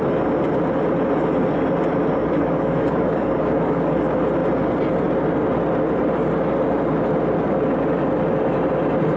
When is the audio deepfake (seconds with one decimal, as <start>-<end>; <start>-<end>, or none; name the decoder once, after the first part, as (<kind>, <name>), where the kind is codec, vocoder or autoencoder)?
2.2-4.0 (codec, DAC)